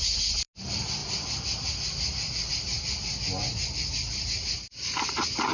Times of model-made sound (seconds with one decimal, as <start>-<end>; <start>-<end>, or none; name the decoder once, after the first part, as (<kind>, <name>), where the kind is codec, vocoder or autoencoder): none